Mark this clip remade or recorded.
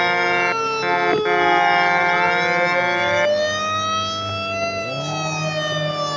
recorded